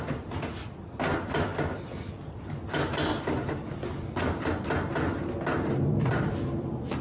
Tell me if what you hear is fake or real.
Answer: real